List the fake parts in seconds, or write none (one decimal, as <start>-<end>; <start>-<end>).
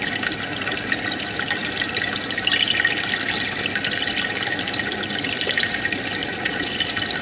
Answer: 6.2-6.8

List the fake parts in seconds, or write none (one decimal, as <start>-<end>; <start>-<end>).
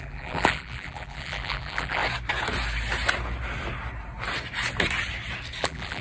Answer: 0.0-2.0; 5.6-6.0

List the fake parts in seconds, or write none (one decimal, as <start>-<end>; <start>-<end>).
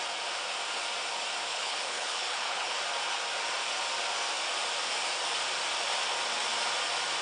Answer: 1.5-2.8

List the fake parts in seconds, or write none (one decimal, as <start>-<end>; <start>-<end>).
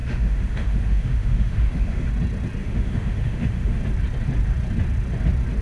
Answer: 0.0-2.1; 2.6-3.8